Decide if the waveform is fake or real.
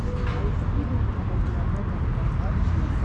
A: real